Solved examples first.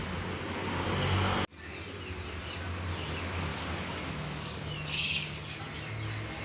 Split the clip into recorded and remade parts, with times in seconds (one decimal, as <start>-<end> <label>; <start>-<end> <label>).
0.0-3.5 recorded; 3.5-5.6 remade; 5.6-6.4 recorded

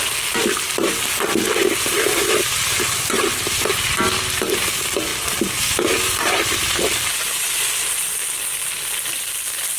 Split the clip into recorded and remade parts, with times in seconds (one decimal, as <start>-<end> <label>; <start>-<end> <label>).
0.0-9.8 recorded

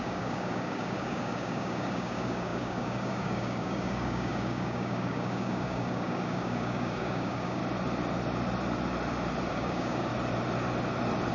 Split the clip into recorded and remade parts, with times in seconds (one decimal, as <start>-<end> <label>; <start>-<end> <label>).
0.0-7.6 remade; 7.6-9.5 recorded; 9.5-10.1 remade; 10.1-11.3 recorded